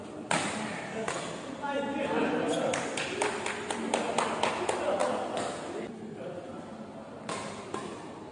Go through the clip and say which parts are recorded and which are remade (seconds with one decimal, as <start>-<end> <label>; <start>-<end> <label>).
0.0-8.3 recorded